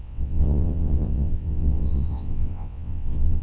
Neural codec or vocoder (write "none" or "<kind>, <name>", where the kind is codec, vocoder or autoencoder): vocoder, WaveNeXt